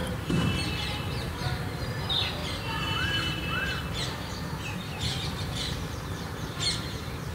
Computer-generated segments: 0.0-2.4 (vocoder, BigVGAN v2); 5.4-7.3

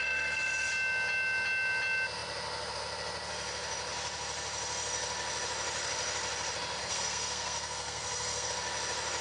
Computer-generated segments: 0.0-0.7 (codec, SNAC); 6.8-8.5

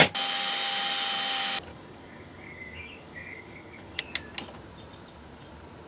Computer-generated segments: 1.7-4.0 (codec, DAC)

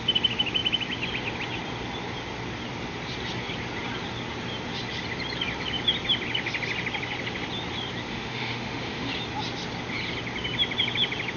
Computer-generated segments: 8.1-9.1 (autoencoder, DAC-VAE)

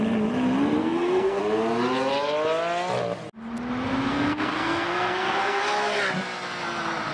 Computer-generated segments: 0.8-1.4 (codec, SNAC); 4.1-5.6